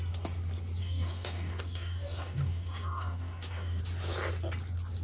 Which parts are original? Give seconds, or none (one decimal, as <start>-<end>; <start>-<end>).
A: 0.0-0.8; 3.8-5.0